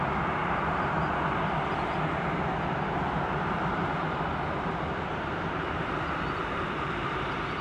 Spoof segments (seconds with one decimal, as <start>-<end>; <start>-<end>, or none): none